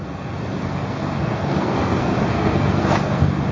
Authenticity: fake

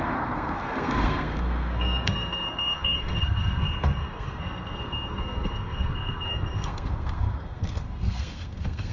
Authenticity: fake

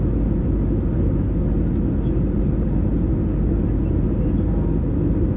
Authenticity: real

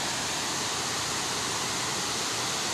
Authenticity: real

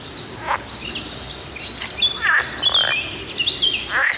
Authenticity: real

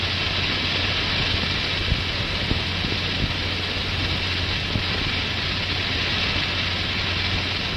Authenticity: real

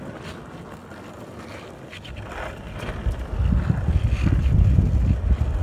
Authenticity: real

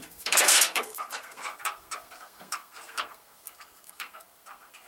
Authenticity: fake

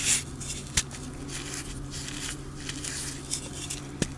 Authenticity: real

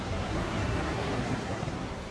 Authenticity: fake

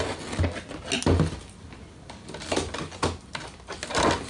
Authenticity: real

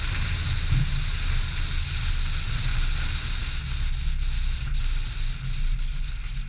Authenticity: real